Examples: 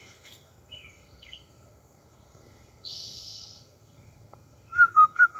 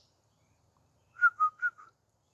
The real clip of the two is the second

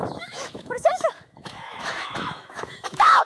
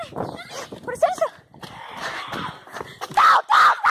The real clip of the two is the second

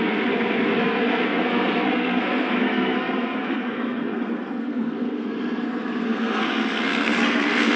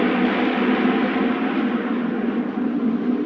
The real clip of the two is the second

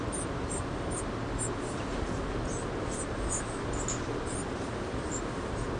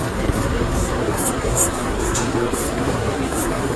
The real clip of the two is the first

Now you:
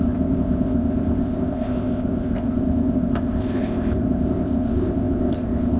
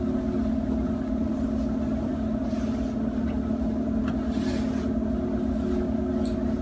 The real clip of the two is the second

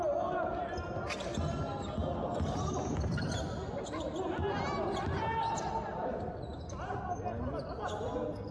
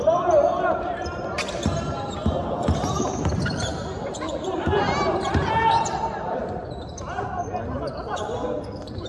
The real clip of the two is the first